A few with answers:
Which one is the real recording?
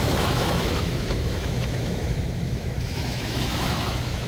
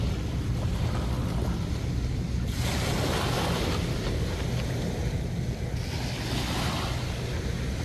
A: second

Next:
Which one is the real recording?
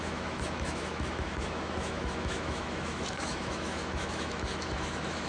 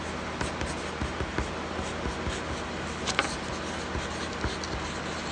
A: second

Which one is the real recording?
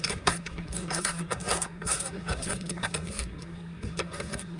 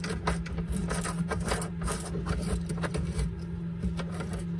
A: second